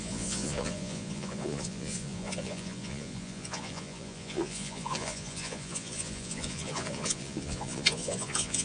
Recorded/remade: remade